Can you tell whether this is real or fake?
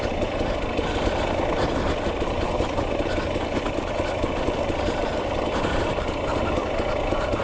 real